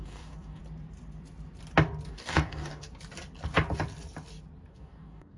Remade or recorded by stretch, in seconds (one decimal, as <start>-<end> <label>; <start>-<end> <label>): 0.0-0.6 remade; 0.6-2.1 recorded; 2.1-2.9 remade; 2.9-4.7 recorded; 4.7-5.4 remade